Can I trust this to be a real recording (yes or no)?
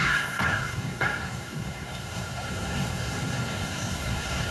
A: no